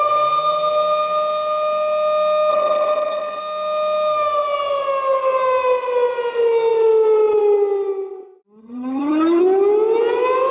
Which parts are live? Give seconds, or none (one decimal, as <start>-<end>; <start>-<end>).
0.0-2.5; 3.4-8.6; 9.4-10.5